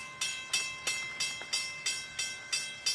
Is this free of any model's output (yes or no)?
yes